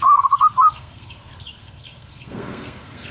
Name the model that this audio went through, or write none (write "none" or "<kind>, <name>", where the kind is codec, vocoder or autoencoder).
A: codec, SNAC